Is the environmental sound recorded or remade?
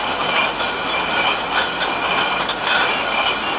recorded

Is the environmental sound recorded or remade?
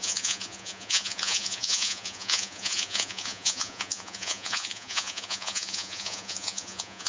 remade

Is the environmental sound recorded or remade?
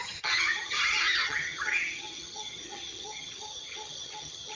remade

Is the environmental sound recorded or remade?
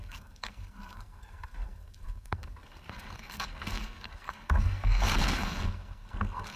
remade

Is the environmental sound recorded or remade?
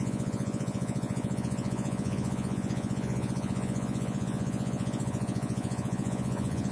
remade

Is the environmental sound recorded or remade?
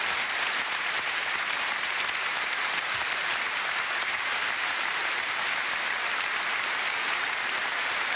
remade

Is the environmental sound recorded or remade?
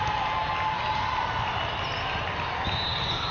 recorded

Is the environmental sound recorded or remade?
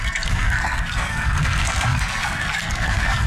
remade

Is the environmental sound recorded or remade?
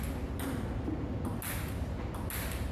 recorded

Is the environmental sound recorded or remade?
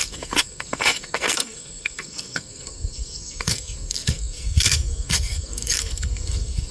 remade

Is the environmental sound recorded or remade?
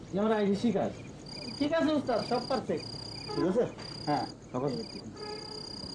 recorded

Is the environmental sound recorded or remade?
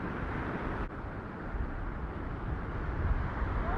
recorded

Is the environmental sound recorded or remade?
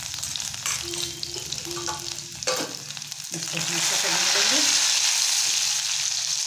recorded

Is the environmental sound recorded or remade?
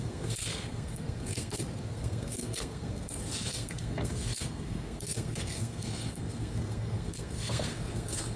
remade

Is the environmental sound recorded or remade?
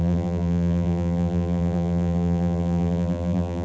remade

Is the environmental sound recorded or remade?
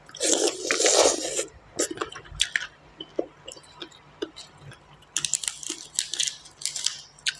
recorded